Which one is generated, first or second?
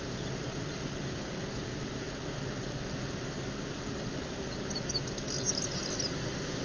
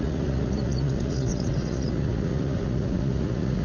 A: second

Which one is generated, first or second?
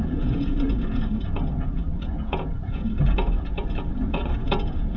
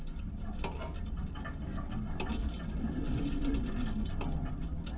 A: first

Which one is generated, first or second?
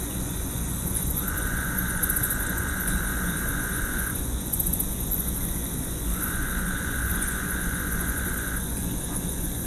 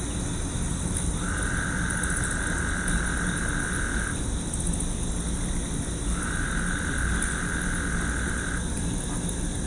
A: first